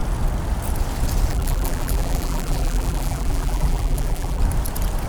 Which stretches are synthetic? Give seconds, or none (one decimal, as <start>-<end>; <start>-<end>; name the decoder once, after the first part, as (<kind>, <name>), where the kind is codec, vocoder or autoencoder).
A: 1.3-4.4 (vocoder, BigVGAN v2)

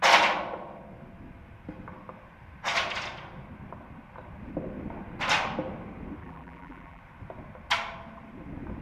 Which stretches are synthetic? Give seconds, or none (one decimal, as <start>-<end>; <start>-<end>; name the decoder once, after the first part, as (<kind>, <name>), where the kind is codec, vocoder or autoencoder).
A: 6.2-7.0 (vocoder, BigVGAN v2)

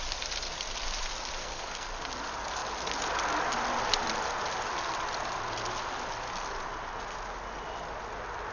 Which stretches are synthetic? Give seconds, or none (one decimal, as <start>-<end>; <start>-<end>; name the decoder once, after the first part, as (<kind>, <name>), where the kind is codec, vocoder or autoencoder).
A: 1.4-1.9 (codec, SNAC)

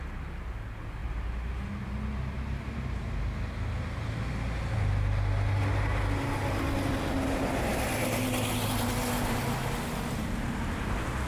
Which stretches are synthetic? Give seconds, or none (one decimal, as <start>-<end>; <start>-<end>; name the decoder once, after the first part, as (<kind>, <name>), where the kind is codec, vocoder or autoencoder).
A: none

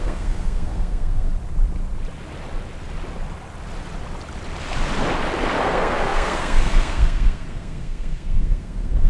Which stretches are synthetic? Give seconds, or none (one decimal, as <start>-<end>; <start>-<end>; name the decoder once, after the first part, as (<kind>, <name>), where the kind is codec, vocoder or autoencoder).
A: 0.0-1.3 (codec, SNAC); 5.6-9.1